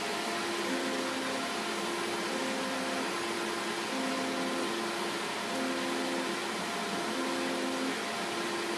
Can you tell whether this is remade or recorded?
recorded